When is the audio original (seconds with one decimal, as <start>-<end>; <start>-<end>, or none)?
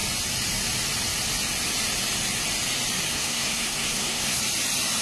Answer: 0.0-3.1; 4.4-5.0